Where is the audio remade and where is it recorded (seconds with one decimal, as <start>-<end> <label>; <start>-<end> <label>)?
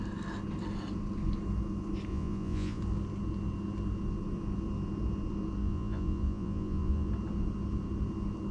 0.0-2.1 recorded; 2.1-2.8 remade; 2.8-5.6 recorded; 5.6-7.1 remade; 7.1-8.5 recorded